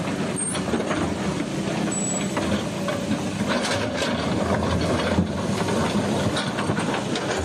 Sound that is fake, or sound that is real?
real